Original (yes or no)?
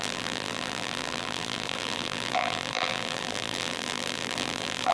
no